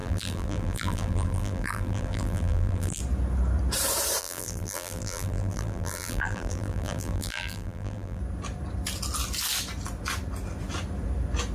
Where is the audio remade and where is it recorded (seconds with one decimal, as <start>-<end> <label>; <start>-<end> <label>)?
0.0-3.0 remade; 3.0-4.2 recorded; 4.2-8.2 remade; 8.2-11.5 recorded